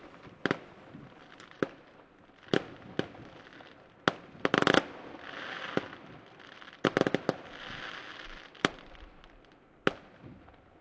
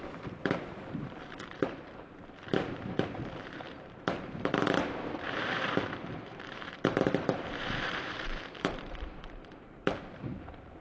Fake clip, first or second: second